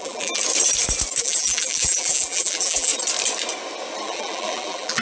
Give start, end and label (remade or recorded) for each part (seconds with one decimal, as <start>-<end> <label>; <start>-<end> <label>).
0.0-0.4 remade; 0.4-1.2 recorded; 1.2-2.9 remade; 2.9-4.0 recorded; 4.0-5.0 remade